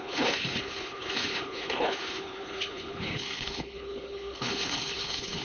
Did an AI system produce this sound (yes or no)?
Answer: yes